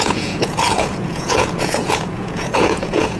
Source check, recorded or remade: remade